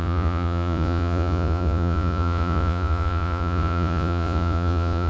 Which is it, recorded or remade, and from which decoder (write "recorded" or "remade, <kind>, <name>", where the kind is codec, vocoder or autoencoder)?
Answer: remade, vocoder, Vocos